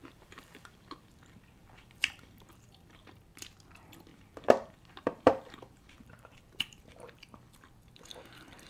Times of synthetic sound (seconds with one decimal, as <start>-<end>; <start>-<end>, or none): 0.0-3.2; 4.1-6.8